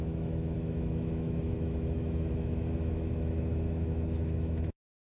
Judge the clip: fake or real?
fake